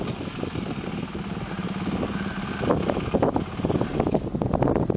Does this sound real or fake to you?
real